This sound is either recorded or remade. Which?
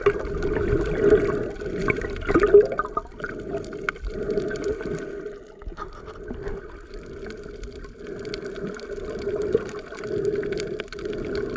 recorded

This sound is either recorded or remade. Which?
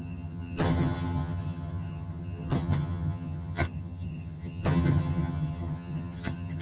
remade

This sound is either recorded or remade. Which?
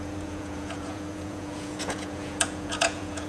remade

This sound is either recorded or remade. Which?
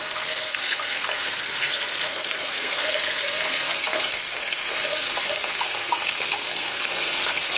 remade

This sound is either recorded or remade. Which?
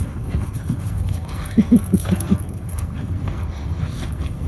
remade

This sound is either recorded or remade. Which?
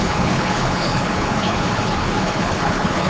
remade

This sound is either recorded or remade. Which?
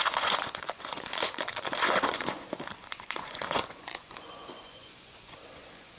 remade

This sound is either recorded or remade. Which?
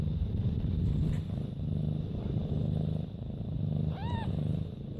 remade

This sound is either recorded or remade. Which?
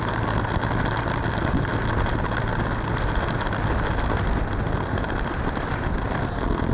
recorded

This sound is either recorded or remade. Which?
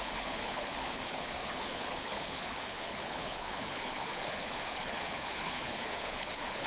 remade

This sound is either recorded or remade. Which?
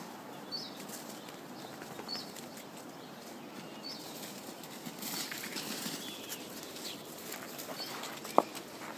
recorded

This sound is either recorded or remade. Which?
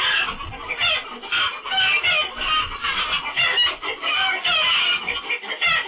recorded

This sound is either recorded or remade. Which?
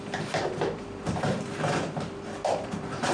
remade